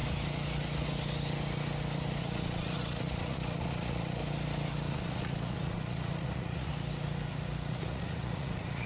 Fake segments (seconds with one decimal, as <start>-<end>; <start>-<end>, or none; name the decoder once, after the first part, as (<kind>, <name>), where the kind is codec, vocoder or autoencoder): 2.2-4.2 (vocoder, Vocos); 4.9-6.7; 7.7-8.9